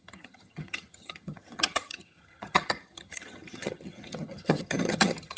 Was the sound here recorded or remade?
remade